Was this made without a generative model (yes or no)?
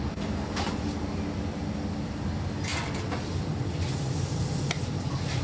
yes